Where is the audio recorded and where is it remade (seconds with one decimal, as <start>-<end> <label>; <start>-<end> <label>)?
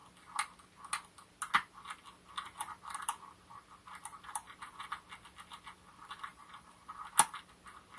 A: 0.0-6.3 recorded; 6.3-7.0 remade; 7.0-8.0 recorded